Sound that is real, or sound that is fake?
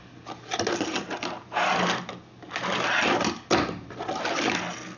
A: real